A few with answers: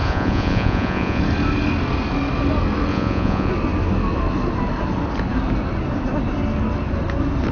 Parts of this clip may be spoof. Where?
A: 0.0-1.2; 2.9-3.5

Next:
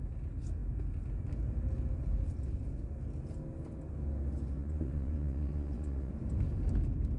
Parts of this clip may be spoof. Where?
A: 4.6-6.1

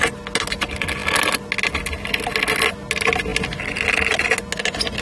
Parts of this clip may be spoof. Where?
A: none

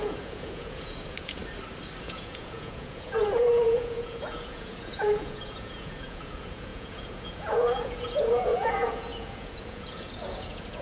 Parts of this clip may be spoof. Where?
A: 0.0-1.4; 2.0-10.8

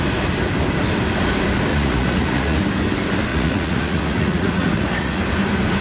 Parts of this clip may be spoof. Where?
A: 1.7-2.6; 3.3-5.2

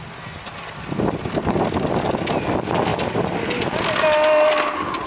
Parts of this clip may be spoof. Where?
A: none

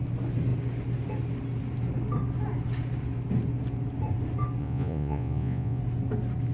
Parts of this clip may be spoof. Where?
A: 4.6-5.8